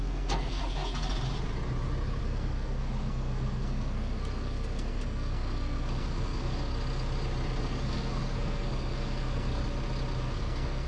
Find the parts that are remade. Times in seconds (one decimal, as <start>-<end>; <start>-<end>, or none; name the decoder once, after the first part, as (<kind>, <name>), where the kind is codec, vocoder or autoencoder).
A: 0.0-0.6 (codec, SNAC); 2.2-6.7; 7.6-9.6; 10.2-10.9